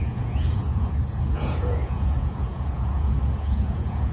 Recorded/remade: remade